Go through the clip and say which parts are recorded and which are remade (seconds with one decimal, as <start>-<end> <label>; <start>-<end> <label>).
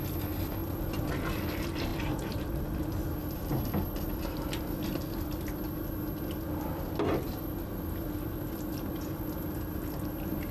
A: 0.0-1.9 recorded; 1.9-2.5 remade; 2.5-10.5 recorded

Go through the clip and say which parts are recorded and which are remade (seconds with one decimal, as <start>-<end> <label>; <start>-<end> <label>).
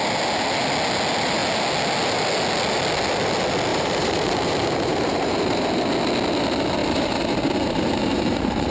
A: 0.0-3.7 recorded; 3.7-5.7 remade; 5.7-6.8 recorded; 6.8-8.7 remade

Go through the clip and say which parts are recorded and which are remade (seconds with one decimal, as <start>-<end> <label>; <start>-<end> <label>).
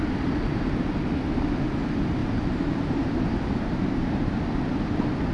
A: 0.0-2.2 recorded; 2.2-4.4 remade; 4.4-5.3 recorded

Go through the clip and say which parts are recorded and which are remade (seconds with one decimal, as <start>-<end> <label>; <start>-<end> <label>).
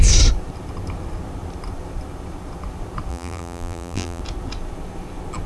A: 0.0-3.1 recorded; 3.1-4.2 remade; 4.2-5.5 recorded